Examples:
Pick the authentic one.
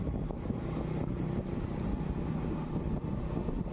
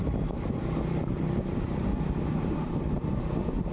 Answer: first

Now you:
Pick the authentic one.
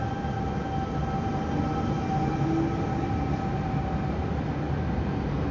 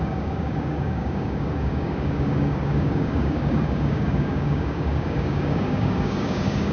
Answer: first